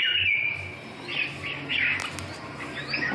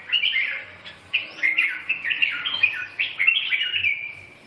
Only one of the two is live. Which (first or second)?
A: first